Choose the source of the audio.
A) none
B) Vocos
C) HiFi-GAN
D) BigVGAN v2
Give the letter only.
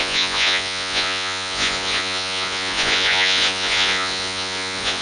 B